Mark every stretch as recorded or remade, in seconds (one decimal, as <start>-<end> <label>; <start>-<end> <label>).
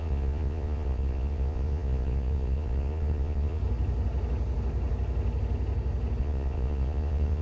0.0-3.6 remade; 3.6-6.2 recorded; 6.2-7.4 remade